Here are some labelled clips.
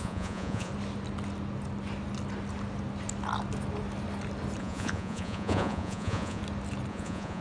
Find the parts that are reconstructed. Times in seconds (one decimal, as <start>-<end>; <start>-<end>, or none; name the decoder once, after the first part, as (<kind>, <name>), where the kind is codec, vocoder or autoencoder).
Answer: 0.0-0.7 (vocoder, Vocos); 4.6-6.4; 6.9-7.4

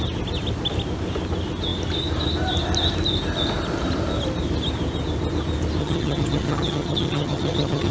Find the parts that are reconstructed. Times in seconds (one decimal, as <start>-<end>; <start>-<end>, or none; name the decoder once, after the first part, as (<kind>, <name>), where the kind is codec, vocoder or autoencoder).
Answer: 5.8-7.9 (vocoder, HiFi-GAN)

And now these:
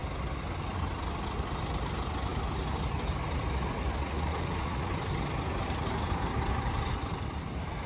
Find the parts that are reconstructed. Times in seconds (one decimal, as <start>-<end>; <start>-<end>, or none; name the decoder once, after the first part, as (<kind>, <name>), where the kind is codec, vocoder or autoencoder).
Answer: 4.0-4.9 (vocoder, Vocos)

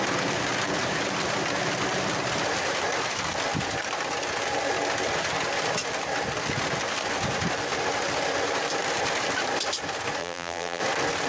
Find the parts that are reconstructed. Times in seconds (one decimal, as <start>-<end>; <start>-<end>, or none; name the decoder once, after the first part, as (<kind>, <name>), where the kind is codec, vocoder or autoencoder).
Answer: 10.2-10.8 (vocoder, BigVGAN v2)

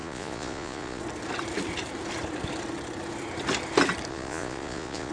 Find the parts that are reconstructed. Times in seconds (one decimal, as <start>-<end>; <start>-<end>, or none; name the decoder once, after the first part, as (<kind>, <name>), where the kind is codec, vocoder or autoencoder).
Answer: 0.0-1.0 (vocoder, Vocos); 4.1-5.1